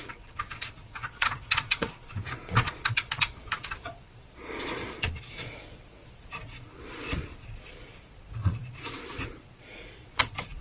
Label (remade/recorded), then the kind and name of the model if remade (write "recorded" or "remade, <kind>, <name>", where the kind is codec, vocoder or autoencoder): remade, vocoder, Vocos